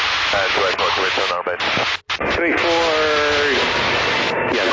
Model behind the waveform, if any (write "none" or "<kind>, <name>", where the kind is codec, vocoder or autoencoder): none